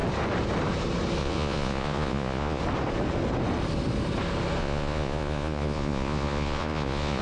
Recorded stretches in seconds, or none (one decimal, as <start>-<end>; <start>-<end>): 0.0-1.2; 2.6-4.6